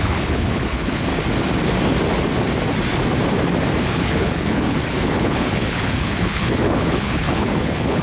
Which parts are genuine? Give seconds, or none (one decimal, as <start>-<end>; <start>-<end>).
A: 1.1-3.8